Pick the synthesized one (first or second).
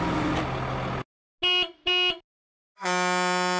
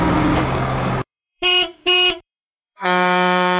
second